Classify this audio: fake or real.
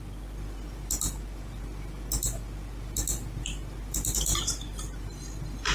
real